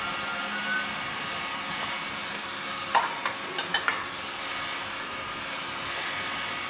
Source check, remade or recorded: recorded